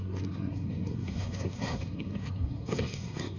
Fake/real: fake